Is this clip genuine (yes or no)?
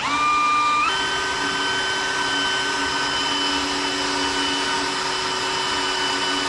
yes